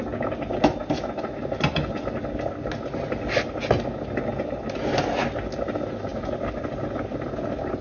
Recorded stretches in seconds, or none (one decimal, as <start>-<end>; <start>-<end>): 0.0-7.8